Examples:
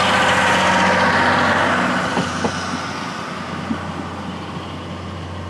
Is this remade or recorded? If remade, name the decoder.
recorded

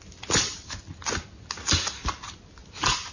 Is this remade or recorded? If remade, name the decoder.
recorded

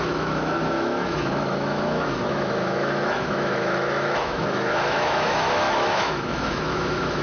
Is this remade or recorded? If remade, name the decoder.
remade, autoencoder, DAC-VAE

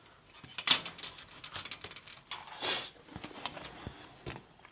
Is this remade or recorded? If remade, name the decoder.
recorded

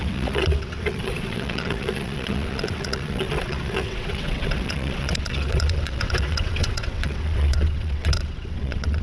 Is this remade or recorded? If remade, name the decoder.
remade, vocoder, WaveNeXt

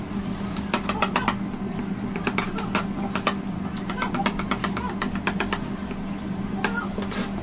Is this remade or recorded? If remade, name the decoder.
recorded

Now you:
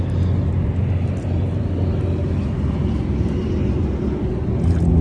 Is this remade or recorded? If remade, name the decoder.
recorded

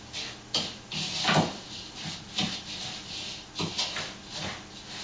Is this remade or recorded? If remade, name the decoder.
recorded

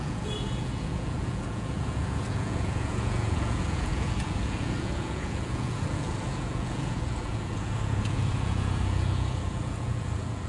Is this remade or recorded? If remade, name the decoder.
remade, vocoder, Vocos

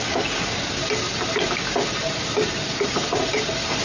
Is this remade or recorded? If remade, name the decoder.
recorded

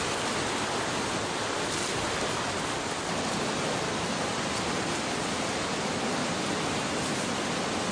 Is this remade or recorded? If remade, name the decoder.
remade, vocoder, BigVGAN v2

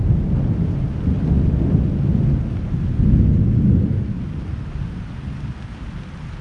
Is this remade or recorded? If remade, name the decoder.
recorded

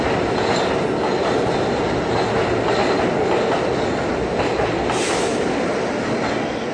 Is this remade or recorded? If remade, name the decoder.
recorded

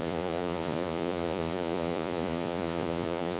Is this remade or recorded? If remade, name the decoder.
remade, vocoder, Vocos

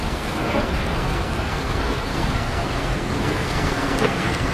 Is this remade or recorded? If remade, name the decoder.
remade, codec, SNAC